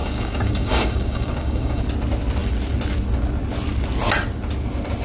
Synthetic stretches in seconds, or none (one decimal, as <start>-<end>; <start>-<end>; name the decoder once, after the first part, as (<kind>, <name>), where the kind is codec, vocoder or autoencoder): 0.0-1.8 (codec, DAC)